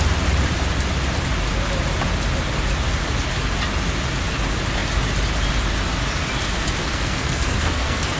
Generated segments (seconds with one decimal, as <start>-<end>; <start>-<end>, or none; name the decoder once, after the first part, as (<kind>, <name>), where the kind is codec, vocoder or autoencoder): 6.8-8.2 (codec, SNAC)

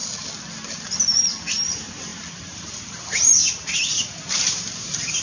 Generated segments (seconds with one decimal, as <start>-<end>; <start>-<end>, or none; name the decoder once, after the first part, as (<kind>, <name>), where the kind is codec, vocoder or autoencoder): 1.6-3.3 (vocoder, BigVGAN v2); 4.8-5.2

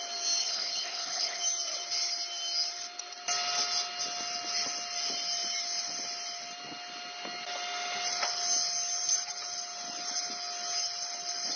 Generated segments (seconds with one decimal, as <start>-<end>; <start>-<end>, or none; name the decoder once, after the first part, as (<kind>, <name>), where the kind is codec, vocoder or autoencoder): 0.4-1.4 (codec, HILCodec)

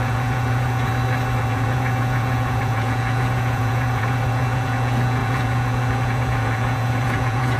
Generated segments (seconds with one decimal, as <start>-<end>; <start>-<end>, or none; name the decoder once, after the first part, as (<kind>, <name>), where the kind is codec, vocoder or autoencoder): 0.0-0.9 (vocoder, Vocos); 1.4-7.6

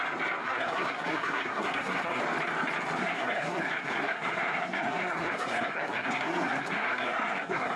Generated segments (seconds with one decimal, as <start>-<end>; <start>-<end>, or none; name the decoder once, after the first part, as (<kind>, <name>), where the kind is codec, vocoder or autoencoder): 0.4-2.2 (codec, SNAC); 3.0-7.8

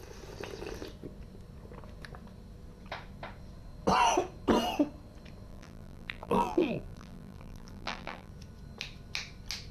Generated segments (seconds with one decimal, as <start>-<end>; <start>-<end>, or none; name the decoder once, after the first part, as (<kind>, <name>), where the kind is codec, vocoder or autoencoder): 5.5-8.3 (vocoder, BigVGAN v2)

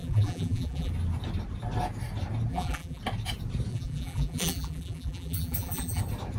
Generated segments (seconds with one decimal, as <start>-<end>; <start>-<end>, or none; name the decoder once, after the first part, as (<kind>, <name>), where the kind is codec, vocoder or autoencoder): 0.0-0.9 (vocoder, BigVGAN v2); 2.5-3.0; 3.7-6.0

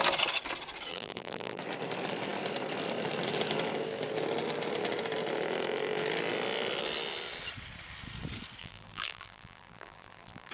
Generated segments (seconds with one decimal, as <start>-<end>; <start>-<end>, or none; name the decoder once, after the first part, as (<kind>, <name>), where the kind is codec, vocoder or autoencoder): 0.9-1.6 (vocoder, BigVGAN v2); 8.6-10.5